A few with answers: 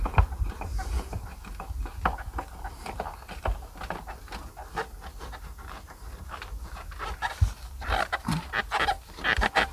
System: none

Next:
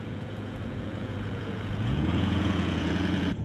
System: vocoder, Vocos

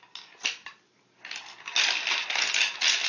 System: none